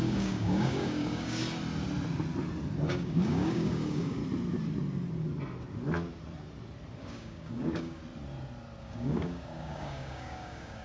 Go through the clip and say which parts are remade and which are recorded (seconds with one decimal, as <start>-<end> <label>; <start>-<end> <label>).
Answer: 0.0-1.4 remade; 1.4-2.9 recorded; 2.9-4.2 remade; 4.2-7.0 recorded; 7.0-8.0 remade; 8.0-8.8 recorded; 8.8-10.8 remade